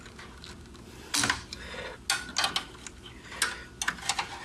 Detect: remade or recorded recorded